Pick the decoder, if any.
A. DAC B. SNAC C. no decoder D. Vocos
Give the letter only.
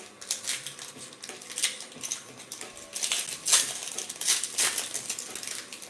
C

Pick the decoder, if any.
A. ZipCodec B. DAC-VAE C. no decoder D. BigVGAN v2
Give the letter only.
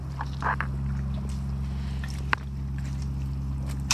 C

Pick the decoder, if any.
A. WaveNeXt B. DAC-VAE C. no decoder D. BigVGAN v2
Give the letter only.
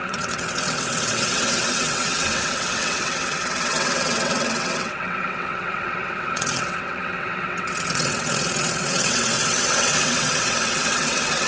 A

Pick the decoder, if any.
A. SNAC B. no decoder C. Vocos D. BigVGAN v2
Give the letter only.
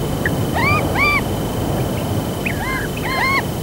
B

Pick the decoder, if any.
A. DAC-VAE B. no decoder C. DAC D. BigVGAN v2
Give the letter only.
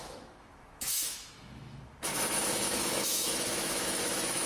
A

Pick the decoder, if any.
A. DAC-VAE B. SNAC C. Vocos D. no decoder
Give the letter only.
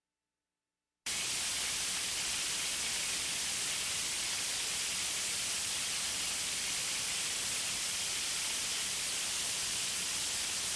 D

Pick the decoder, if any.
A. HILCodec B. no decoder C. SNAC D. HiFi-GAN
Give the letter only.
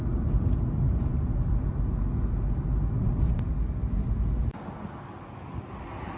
B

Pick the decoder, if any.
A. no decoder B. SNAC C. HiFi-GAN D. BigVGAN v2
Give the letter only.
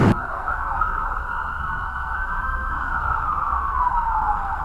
B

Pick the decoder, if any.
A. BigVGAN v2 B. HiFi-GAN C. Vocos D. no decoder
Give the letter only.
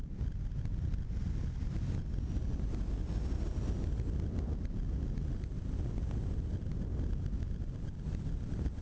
D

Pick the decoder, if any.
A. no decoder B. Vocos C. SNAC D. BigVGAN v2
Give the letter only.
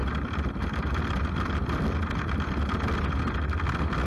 A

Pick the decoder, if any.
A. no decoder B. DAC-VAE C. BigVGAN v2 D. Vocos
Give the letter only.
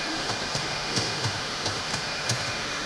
B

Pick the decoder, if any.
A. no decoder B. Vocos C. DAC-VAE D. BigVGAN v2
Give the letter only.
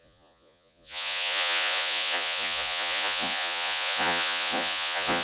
B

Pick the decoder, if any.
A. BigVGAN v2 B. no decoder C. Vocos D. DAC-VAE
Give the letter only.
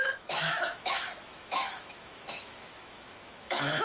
D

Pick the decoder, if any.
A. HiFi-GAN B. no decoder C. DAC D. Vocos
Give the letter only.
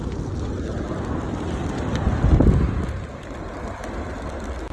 B